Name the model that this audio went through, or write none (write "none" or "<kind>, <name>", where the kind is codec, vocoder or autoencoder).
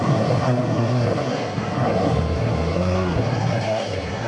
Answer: codec, SNAC